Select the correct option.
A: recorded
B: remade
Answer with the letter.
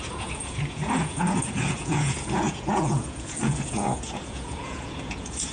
B